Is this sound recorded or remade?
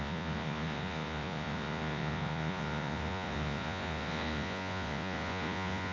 remade